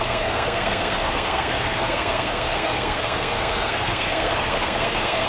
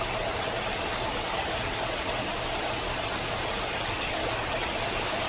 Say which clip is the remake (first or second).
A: first